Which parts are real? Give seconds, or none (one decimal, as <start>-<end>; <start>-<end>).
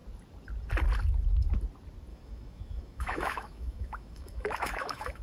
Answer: 0.0-2.1